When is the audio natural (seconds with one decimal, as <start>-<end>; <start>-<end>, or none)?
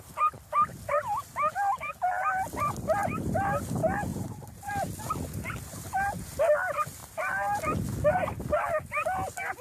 0.0-4.1; 4.7-9.6